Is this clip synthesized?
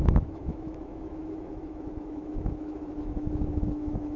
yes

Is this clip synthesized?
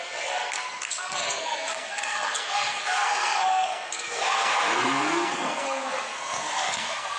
yes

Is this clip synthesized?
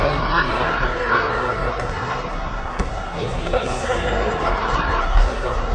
yes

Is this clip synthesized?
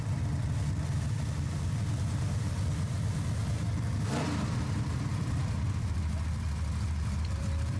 yes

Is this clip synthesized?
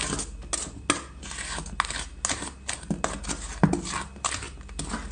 no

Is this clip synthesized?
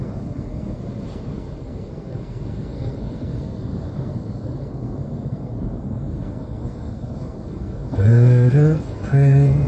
yes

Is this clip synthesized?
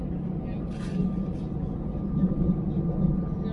no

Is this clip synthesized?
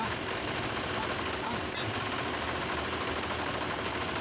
no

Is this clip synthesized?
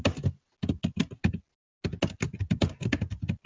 no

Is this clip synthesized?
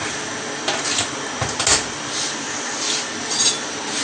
no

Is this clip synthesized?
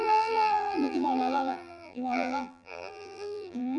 yes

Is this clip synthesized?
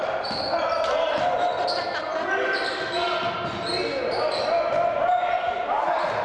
no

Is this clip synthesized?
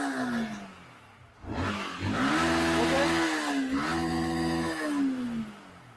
no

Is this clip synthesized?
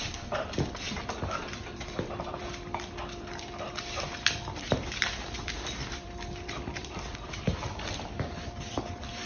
yes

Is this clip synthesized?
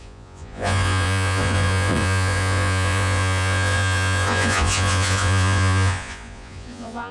yes